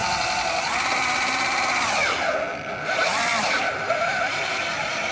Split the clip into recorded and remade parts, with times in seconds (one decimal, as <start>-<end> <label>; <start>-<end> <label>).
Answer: 0.0-5.1 recorded